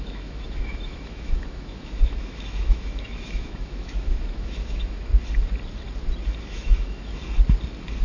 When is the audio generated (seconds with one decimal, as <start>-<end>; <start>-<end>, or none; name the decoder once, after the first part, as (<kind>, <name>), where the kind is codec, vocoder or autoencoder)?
0.0-5.1 (autoencoder, DAC-VAE); 6.4-7.1